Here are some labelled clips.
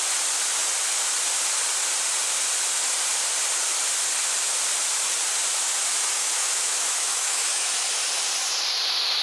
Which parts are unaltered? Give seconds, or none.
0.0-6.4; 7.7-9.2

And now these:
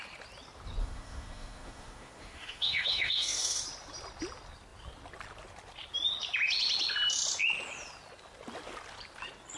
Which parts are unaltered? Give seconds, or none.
0.0-0.8; 3.6-9.6

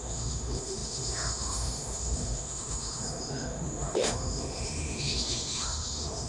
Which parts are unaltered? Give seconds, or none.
none

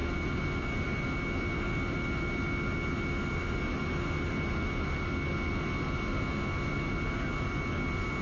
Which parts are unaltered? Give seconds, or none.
0.0-8.2

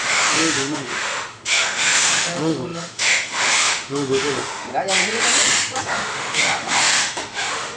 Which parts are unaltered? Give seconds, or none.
4.7-5.8

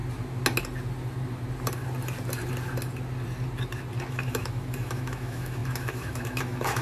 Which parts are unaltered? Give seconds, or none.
0.0-4.1

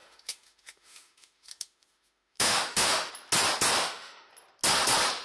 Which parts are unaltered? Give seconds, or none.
3.1-3.8; 4.3-5.2

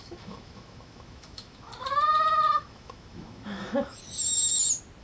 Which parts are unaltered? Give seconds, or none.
1.7-2.5; 4.0-5.0